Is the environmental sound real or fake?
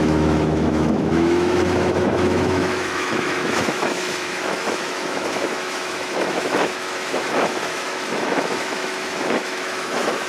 fake